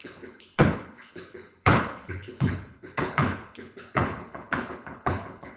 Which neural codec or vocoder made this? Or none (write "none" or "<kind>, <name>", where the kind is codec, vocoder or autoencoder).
codec, HILCodec